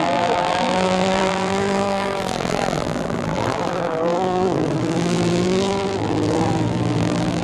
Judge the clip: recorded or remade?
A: remade